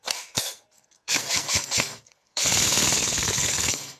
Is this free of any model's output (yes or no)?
no